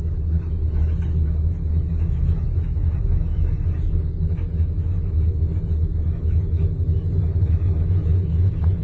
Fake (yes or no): yes